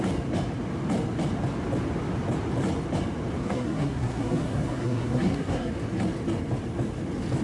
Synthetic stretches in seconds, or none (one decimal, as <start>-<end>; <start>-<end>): 3.4-5.7